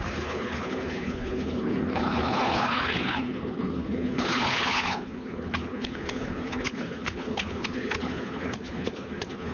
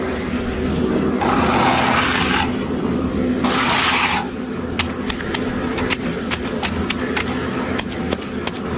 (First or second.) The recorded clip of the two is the second